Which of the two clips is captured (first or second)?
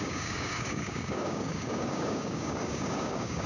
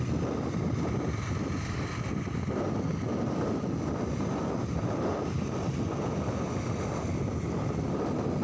second